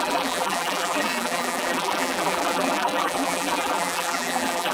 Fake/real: fake